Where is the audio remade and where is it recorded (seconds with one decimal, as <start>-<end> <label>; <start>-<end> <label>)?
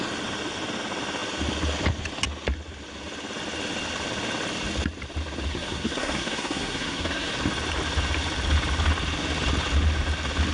0.0-5.5 recorded; 5.5-7.3 remade; 7.3-10.5 recorded